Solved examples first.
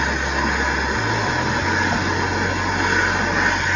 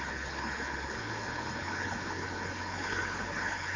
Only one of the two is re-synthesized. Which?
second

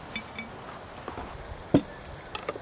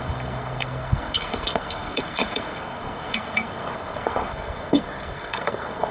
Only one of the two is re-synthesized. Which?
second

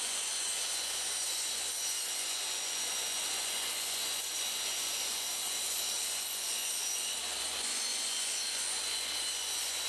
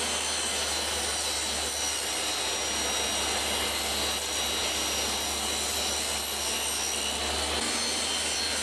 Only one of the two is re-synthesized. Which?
first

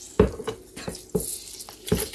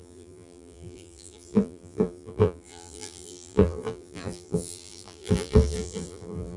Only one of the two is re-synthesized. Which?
second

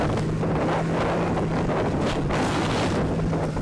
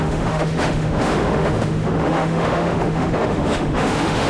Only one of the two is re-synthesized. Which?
second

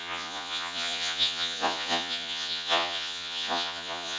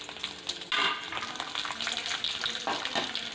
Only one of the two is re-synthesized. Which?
first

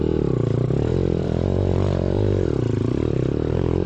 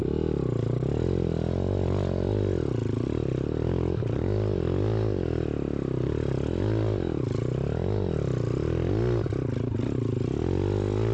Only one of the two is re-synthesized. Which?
first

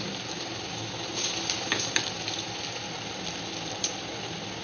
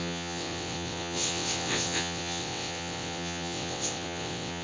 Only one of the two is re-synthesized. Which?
second